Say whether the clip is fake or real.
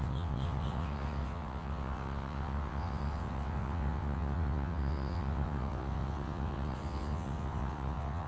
fake